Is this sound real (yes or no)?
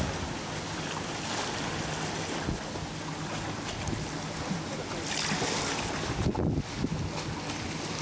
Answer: yes